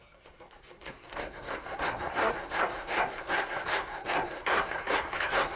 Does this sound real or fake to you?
fake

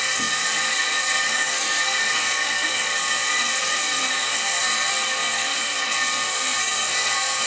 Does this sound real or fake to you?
fake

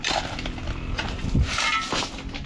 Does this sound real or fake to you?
real